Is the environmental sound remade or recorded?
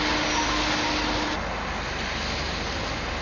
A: recorded